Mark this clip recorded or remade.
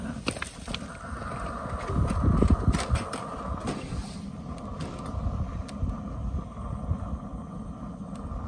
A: recorded